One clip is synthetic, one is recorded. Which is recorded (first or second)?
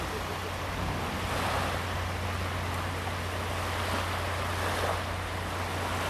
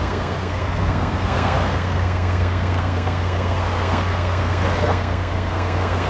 first